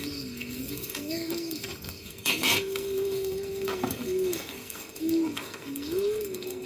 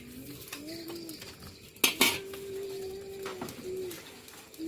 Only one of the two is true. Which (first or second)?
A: second